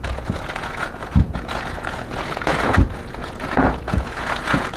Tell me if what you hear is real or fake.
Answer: fake